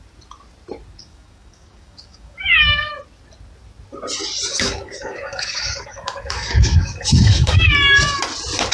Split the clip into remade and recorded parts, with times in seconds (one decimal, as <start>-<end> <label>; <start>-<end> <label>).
0.0-1.0 recorded; 1.0-2.9 remade; 2.9-4.5 recorded; 4.5-8.2 remade; 8.2-8.7 recorded